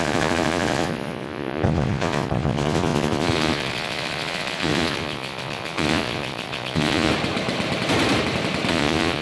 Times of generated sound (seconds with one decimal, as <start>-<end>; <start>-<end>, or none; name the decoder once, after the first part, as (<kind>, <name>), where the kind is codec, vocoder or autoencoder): 0.0-7.1 (vocoder, Vocos); 8.7-9.2